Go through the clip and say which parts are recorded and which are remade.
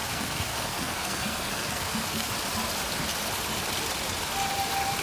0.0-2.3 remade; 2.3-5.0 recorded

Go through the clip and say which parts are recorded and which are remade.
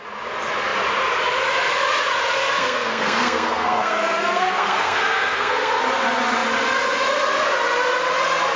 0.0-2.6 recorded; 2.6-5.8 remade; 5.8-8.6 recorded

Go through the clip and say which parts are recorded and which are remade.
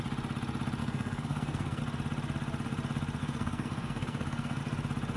0.0-0.8 recorded; 0.8-1.8 remade; 1.8-3.2 recorded; 3.2-4.6 remade; 4.6-5.2 recorded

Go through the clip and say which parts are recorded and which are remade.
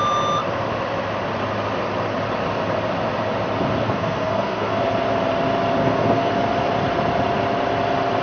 0.0-3.8 recorded; 3.8-4.8 remade; 4.8-5.8 recorded; 5.8-6.3 remade; 6.3-8.2 recorded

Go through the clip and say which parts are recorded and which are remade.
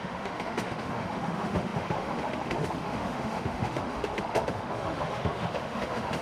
0.0-6.2 remade